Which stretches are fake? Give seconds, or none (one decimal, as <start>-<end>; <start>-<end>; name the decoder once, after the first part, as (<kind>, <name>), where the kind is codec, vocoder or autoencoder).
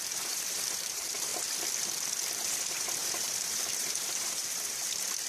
0.0-1.3 (vocoder, BigVGAN v2); 2.5-5.3